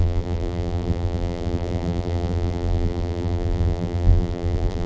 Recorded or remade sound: remade